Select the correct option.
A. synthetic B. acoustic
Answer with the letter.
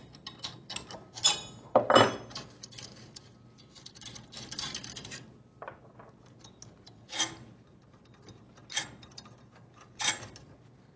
B